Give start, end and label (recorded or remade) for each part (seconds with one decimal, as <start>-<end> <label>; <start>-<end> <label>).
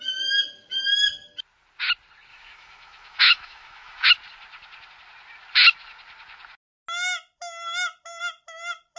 0.0-2.3 recorded; 2.3-4.1 remade; 4.1-9.0 recorded